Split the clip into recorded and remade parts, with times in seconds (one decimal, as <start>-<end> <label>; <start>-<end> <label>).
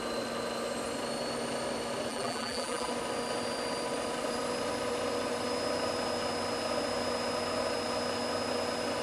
0.0-2.1 recorded; 2.1-2.9 remade; 2.9-9.0 recorded